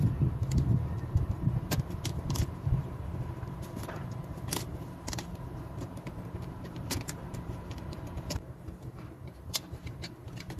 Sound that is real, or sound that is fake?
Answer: fake